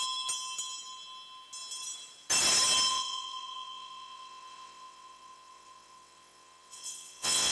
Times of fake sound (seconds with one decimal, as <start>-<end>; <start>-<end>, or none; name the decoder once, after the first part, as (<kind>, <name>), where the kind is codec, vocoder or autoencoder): 2.9-7.5 (vocoder, WaveNeXt)